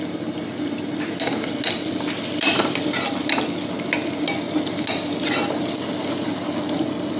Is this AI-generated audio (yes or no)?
no